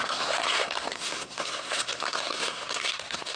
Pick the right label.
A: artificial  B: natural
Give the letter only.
A